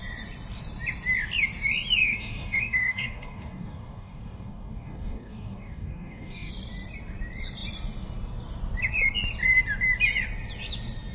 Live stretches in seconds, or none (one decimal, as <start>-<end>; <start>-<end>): 0.0-2.0; 6.5-11.1